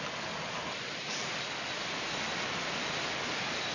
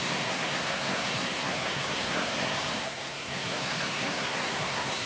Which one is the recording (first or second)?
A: first